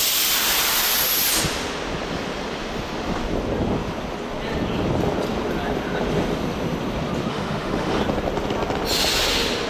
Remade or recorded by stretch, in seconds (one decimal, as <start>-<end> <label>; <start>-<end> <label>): 0.0-7.3 recorded; 7.3-8.0 remade; 8.0-9.7 recorded